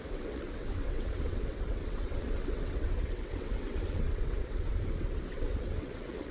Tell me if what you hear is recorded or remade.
remade